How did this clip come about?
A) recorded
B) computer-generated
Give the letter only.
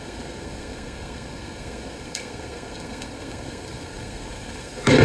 B